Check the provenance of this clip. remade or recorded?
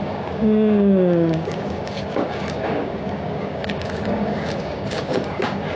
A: remade